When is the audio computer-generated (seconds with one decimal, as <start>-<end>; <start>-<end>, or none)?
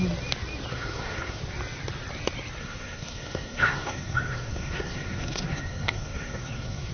0.7-1.4; 2.6-6.9